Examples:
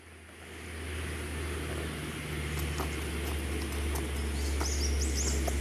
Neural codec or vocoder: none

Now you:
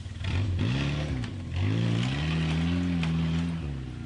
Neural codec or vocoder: none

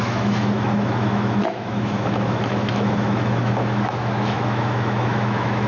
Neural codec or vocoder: autoencoder, DAC-VAE